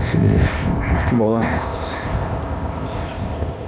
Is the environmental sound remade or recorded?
remade